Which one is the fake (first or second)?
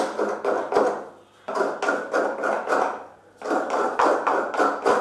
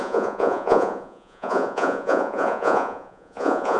second